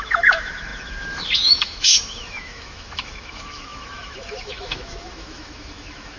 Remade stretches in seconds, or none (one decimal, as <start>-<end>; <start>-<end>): 0.0-6.2

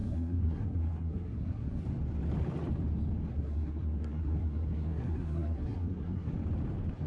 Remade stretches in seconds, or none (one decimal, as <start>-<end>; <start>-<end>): 0.0-1.8; 3.3-6.3